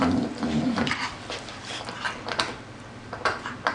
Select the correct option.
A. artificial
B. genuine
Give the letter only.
B